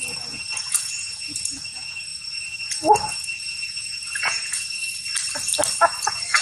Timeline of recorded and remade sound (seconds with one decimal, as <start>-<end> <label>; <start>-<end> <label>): 0.0-4.8 remade; 4.8-5.7 recorded; 5.7-6.4 remade